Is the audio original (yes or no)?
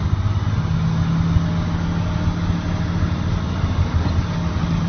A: yes